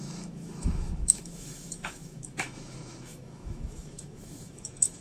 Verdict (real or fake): fake